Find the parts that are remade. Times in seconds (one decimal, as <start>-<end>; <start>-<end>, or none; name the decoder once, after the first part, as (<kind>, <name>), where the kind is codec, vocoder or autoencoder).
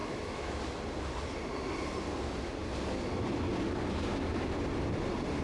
0.0-0.6 (autoencoder, DAC-VAE)